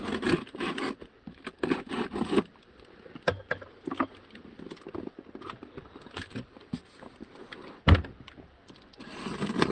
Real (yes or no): yes